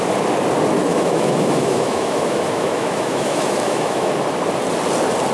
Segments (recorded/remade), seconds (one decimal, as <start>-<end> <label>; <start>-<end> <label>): 0.0-0.9 recorded; 0.9-4.1 remade; 4.1-5.3 recorded